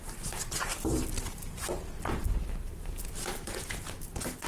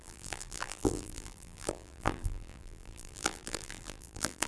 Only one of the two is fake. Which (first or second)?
second